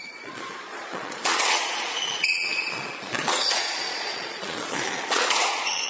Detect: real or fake fake